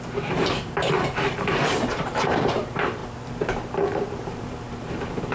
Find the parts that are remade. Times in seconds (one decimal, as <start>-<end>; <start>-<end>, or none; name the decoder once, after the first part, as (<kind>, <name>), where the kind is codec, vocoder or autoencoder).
0.0-3.0 (vocoder, BigVGAN v2); 3.7-5.3